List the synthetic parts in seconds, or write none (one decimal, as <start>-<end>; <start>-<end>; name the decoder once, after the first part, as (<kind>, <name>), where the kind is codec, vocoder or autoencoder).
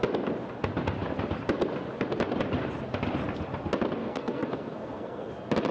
4.0-5.3 (codec, SNAC)